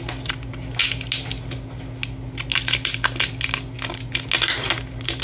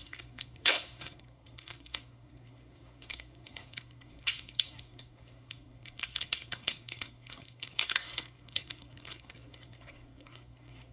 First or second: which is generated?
second